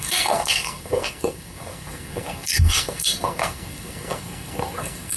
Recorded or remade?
remade